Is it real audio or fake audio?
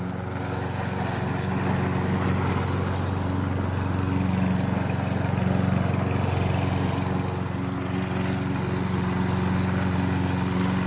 real